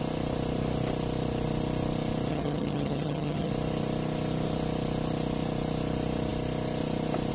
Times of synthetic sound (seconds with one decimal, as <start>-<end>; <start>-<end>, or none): 2.3-3.5